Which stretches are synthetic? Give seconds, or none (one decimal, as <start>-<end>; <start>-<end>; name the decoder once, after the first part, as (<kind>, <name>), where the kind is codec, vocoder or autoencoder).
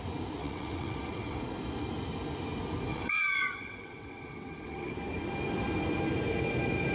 0.4-1.4 (vocoder, WaveNeXt); 2.9-4.9